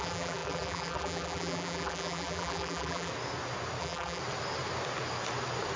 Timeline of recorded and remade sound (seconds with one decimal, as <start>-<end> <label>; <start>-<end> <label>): 0.0-3.1 remade; 3.1-3.8 recorded; 3.8-4.2 remade; 4.2-5.8 recorded